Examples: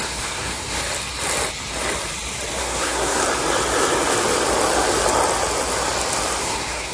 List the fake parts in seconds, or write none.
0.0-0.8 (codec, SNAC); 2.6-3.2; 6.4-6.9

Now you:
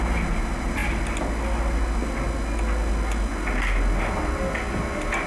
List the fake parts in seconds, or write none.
none

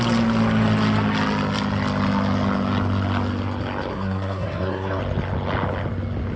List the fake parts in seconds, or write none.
3.9-5.0 (codec, SNAC)

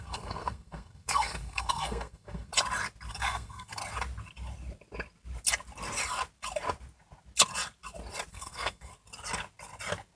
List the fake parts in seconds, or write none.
0.0-2.5 (codec, SNAC); 3.1-3.8; 8.3-8.9